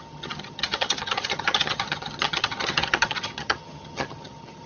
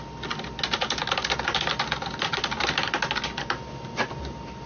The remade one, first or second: first